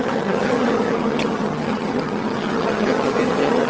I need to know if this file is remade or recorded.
remade